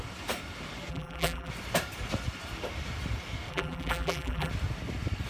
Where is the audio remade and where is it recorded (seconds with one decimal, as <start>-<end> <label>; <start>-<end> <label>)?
0.0-0.9 recorded; 0.9-1.5 remade; 1.5-3.5 recorded; 3.5-4.5 remade; 4.5-5.3 recorded